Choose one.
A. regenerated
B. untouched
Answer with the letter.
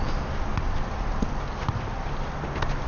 B